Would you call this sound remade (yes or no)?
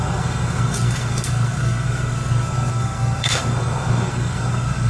yes